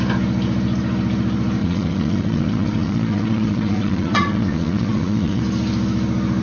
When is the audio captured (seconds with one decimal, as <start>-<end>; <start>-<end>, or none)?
0.0-1.6; 5.4-6.4